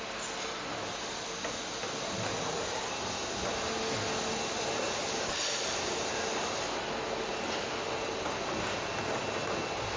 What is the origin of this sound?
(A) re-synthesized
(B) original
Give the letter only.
B